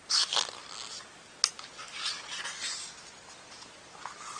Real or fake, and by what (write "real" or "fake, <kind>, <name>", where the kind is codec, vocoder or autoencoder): real